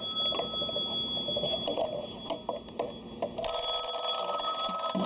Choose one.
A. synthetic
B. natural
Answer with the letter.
B